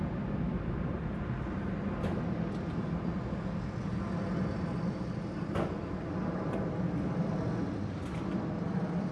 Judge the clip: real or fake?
real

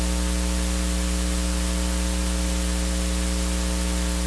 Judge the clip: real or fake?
real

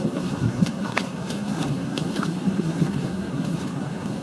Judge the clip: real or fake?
fake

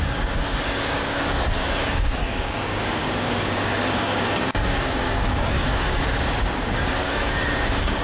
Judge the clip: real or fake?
fake